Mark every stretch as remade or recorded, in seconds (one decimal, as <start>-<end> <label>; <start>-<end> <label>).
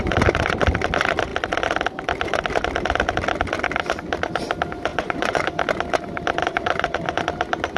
0.0-4.9 recorded; 4.9-5.6 remade; 5.6-6.4 recorded; 6.4-7.2 remade; 7.2-7.8 recorded